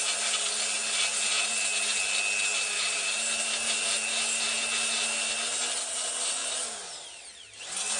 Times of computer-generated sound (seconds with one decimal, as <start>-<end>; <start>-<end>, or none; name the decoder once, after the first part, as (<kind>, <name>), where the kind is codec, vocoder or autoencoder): none